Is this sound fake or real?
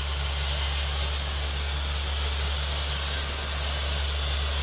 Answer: real